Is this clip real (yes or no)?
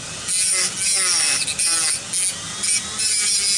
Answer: yes